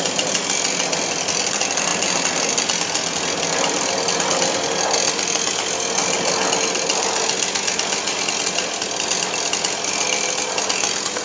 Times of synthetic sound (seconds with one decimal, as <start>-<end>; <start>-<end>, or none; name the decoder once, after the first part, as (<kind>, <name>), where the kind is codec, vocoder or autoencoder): none